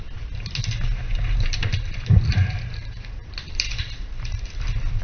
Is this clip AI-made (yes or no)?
no